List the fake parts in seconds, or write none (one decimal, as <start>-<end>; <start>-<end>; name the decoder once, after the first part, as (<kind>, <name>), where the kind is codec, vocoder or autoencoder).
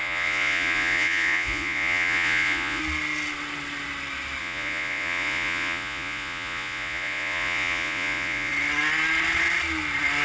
0.0-2.8 (vocoder, Vocos); 4.4-8.5